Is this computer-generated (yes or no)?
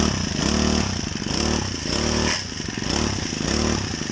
no